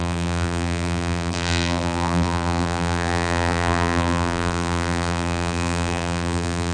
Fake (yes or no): yes